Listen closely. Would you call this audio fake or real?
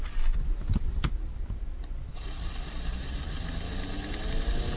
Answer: real